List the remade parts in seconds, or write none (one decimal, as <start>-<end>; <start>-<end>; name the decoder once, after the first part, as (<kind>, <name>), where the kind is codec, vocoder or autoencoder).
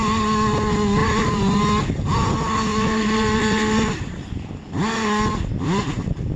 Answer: 1.0-1.6 (vocoder, BigVGAN v2); 2.7-4.5